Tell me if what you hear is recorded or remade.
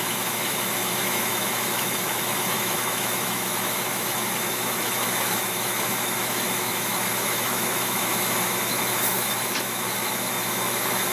remade